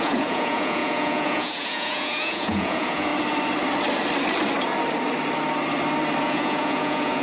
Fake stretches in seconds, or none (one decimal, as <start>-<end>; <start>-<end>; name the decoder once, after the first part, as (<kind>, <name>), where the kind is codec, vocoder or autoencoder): 0.0-3.1 (vocoder, Vocos); 6.2-7.2